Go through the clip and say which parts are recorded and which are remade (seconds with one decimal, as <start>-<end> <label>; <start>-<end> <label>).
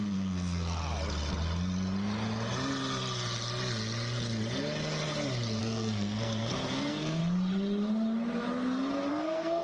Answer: 0.0-0.8 remade; 0.8-5.6 recorded; 5.6-7.2 remade; 7.2-9.1 recorded; 9.1-9.6 remade